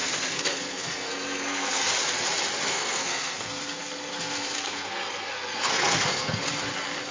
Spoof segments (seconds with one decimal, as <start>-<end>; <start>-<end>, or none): 0.0-1.9; 2.7-6.4